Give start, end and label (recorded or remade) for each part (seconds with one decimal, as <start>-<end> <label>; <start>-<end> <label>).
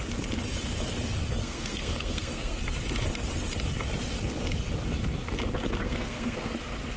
0.0-1.4 recorded; 1.4-2.6 remade; 2.6-5.8 recorded; 5.8-6.5 remade; 6.5-7.0 recorded